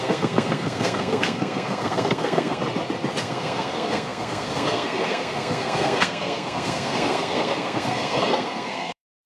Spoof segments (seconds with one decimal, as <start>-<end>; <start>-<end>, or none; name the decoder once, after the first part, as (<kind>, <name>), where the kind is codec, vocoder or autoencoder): 0.0-2.6 (codec, SNAC); 3.2-9.3

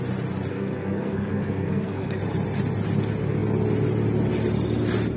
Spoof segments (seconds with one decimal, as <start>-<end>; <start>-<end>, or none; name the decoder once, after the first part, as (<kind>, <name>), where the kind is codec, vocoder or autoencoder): 0.5-2.2 (codec, SNAC)

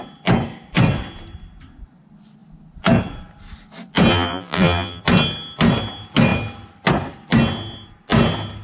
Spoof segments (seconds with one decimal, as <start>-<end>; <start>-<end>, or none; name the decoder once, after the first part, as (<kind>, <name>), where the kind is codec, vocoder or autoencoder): 4.1-5.0 (vocoder, BigVGAN v2)